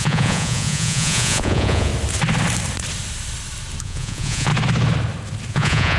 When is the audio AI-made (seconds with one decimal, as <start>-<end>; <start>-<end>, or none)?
0.0-1.9; 3.8-4.5; 5.5-6.0